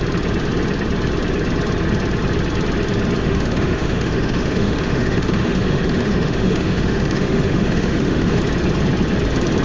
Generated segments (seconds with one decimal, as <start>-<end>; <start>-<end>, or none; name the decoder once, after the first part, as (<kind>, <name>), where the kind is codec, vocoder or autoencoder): 3.2-8.4 (autoencoder, DAC-VAE)